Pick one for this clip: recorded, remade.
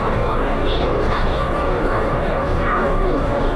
remade